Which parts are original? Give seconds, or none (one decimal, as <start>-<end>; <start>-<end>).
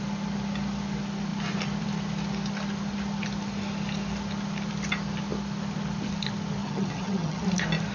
0.0-6.6; 7.4-7.9